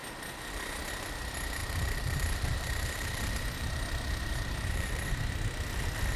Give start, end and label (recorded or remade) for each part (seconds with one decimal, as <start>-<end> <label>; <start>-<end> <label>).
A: 0.0-1.6 recorded; 1.6-5.3 remade; 5.3-6.2 recorded

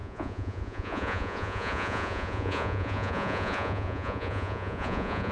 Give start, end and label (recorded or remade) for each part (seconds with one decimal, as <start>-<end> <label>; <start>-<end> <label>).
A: 0.0-5.3 remade